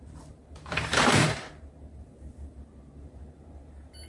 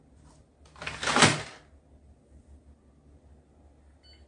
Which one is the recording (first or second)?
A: second